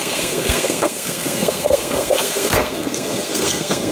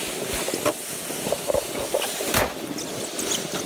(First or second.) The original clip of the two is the second